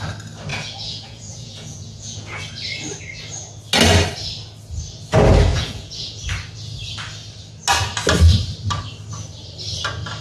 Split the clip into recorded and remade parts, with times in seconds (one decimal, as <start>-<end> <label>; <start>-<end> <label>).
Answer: 0.0-0.5 recorded; 0.5-2.4 remade; 2.4-5.5 recorded; 5.5-6.2 remade; 6.2-10.2 recorded